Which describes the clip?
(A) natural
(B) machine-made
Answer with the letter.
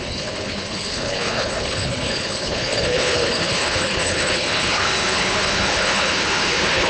B